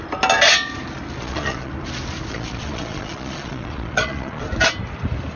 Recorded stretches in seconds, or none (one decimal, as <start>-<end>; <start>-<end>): 0.0-1.2; 1.7-2.3; 4.4-5.4